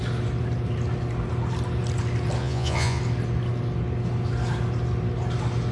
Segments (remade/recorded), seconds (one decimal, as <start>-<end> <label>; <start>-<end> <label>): 0.0-2.4 recorded; 2.4-3.0 remade; 3.0-5.7 recorded

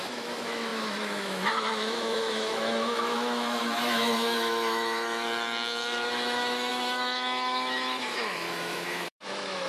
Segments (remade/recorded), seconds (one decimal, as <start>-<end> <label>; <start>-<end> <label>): 0.0-9.7 remade

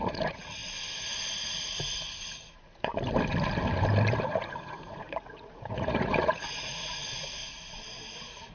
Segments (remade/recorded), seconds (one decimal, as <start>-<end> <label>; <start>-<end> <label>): 0.0-0.6 remade; 0.6-1.6 recorded; 1.6-2.9 remade; 2.9-4.4 recorded; 4.4-7.8 remade; 7.8-8.5 recorded

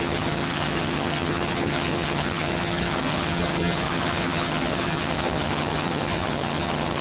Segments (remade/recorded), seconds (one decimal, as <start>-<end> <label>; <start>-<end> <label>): 0.0-7.0 remade

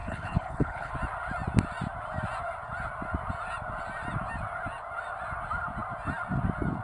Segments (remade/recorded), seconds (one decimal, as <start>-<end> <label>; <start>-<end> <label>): 0.0-0.9 remade; 0.9-6.8 recorded

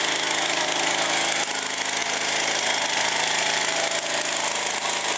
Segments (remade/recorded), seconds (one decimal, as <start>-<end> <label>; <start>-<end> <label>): 0.0-2.0 recorded; 2.0-5.2 remade

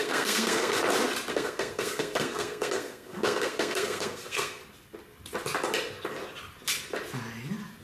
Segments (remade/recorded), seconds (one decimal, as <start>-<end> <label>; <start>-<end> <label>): 0.0-0.8 remade; 0.8-1.3 recorded; 1.3-4.6 remade; 4.6-7.8 recorded